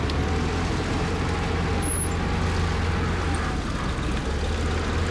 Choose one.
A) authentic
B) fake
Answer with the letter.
A